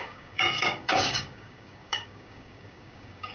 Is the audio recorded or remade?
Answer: remade